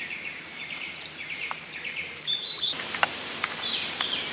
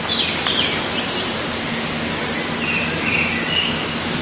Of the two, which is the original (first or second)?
second